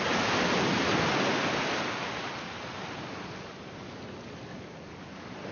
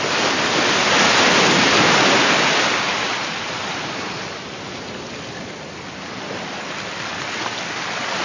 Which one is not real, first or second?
second